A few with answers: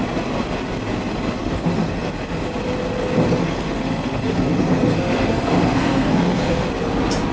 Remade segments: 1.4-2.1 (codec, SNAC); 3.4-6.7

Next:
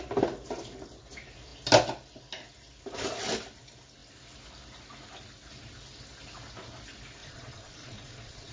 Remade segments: 7.2-8.5 (vocoder, Vocos)

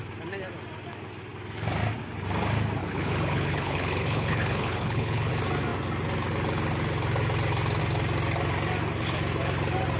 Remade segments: 2.8-5.3 (codec, HILCodec)

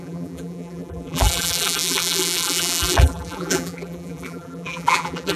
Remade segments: 0.0-5.4 (vocoder, BigVGAN v2)